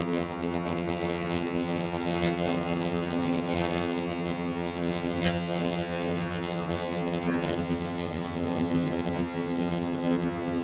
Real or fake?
fake